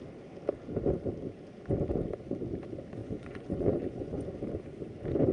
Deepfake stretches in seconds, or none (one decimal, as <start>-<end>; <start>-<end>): 3.0-4.3